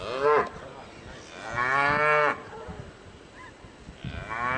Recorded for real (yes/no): yes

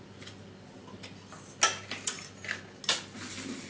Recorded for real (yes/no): yes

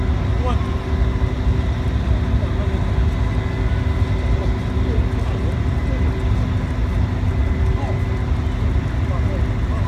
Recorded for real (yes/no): yes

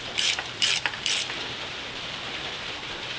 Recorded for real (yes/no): no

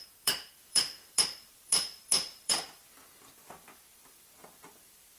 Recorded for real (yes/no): no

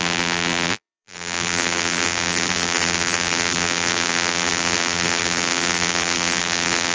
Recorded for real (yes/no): no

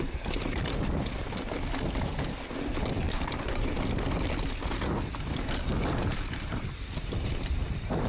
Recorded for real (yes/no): no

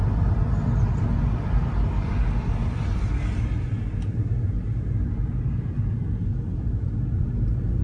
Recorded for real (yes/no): yes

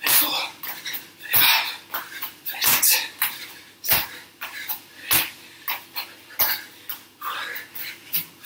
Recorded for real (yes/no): yes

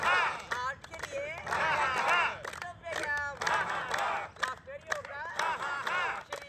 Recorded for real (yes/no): yes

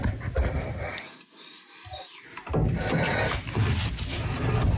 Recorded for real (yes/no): yes